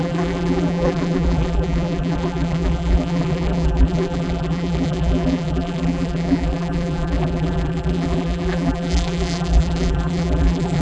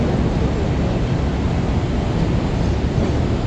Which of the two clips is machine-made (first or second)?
first